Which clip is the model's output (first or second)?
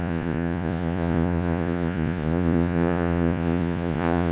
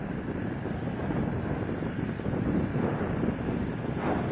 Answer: first